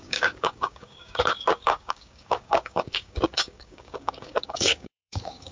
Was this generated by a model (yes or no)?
yes